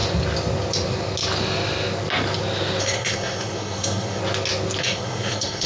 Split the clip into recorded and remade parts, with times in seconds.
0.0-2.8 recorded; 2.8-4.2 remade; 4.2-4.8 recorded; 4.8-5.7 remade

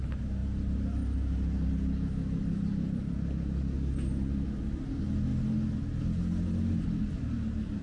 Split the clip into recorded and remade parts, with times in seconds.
0.0-7.8 recorded

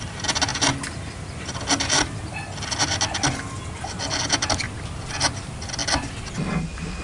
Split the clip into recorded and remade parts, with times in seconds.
0.0-7.0 recorded

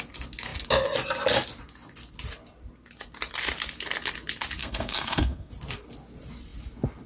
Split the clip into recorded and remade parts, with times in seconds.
0.0-4.6 recorded; 4.6-5.5 remade; 5.5-7.1 recorded

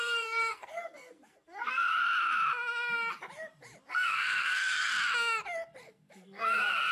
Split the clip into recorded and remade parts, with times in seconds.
0.0-2.0 remade; 2.0-3.9 recorded; 3.9-4.9 remade; 4.9-5.8 recorded; 5.8-6.9 remade

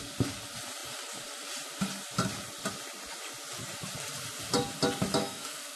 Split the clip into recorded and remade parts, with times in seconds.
0.0-5.2 recorded; 5.2-5.8 remade

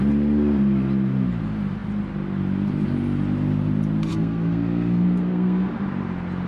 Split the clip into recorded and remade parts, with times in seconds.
0.0-4.1 recorded; 4.1-5.7 remade; 5.7-6.5 recorded